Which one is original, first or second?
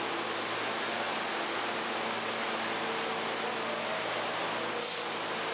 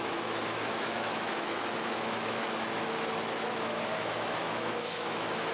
first